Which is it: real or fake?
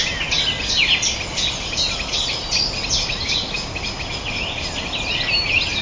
real